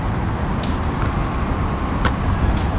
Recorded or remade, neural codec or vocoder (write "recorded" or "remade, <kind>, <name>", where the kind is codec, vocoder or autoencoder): recorded